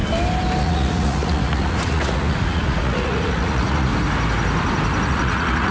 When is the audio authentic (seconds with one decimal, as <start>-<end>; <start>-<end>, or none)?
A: 0.0-0.6; 3.9-5.1